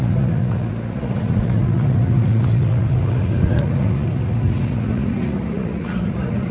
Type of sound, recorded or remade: remade